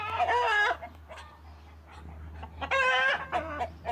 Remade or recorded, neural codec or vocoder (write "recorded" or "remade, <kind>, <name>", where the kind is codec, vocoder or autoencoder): recorded